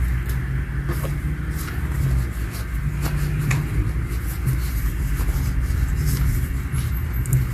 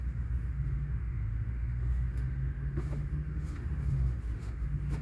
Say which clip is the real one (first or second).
first